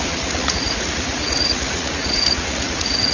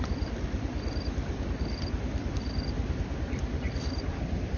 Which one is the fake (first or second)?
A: first